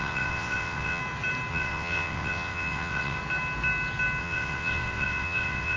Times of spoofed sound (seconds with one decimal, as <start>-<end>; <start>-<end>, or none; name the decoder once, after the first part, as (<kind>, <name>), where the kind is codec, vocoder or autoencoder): 0.0-1.0 (vocoder, WaveNeXt); 1.5-3.2; 4.2-5.8

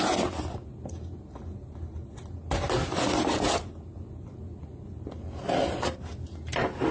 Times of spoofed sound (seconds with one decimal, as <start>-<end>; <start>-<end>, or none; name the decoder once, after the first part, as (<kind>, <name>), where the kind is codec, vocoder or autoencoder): none

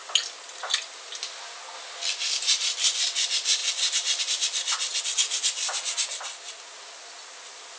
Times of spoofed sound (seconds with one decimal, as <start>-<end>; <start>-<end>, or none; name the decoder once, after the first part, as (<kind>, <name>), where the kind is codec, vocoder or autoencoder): none

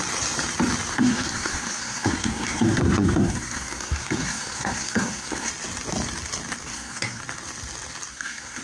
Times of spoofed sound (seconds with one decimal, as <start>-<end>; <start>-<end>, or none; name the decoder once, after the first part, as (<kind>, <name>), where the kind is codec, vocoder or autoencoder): 0.9-5.5 (codec, SNAC); 6.7-7.2; 8.1-8.6

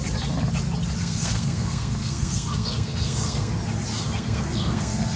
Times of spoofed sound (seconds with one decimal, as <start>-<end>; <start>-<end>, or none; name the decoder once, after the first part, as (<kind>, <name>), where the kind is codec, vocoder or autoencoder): 1.0-3.5 (codec, SNAC); 3.9-5.2

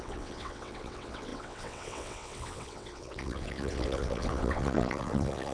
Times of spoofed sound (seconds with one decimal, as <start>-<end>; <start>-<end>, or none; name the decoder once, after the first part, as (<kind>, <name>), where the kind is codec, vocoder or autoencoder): 0.0-5.5 (vocoder, WaveNeXt)

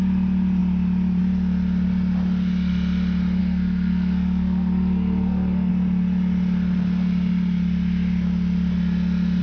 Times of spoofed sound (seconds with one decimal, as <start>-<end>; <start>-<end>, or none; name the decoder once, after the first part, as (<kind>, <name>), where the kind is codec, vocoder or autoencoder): 3.4-5.7 (codec, SNAC)